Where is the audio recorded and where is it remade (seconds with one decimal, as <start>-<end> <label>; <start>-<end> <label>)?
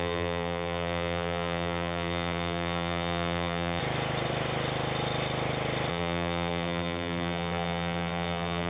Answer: 0.0-3.8 remade; 3.8-5.9 recorded; 5.9-8.7 remade